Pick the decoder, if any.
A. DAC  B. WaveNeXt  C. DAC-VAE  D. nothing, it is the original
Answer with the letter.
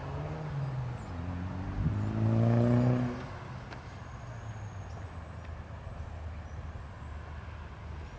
D